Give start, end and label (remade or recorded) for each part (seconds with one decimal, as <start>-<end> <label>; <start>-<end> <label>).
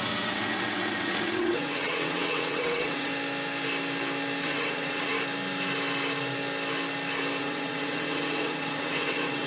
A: 0.0-3.1 remade; 3.1-4.4 recorded; 4.4-5.1 remade; 5.1-7.4 recorded; 7.4-9.5 remade